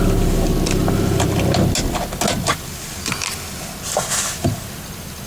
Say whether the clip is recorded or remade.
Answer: recorded